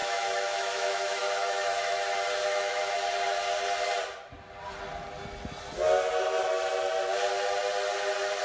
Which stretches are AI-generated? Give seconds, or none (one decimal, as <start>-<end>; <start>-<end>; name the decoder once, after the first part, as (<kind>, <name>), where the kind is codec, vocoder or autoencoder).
0.0-2.0 (autoencoder, DAC-VAE); 2.4-2.9

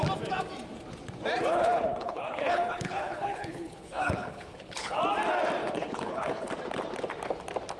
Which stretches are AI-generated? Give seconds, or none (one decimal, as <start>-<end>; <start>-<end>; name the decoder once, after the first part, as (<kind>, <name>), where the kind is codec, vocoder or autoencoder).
1.5-5.0 (codec, HILCodec); 5.6-6.5